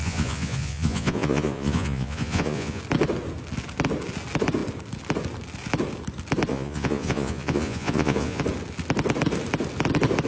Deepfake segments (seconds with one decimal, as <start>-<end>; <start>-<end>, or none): 0.0-2.8; 6.5-8.4